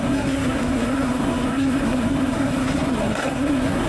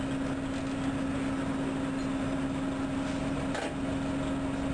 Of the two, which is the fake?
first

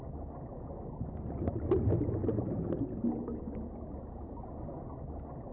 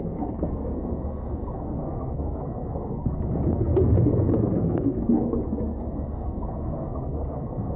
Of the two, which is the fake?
second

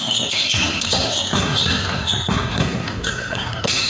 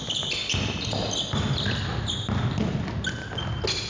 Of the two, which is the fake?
first